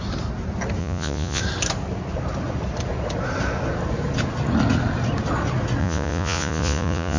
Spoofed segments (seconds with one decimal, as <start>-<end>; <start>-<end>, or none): 0.8-1.4; 5.8-7.2